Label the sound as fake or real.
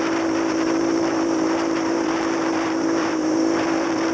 fake